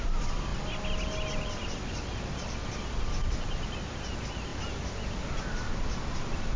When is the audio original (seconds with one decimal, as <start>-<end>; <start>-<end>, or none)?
0.0-6.6